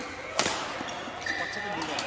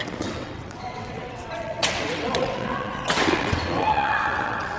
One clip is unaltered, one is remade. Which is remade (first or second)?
second